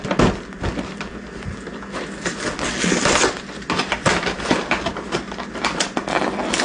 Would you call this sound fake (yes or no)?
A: no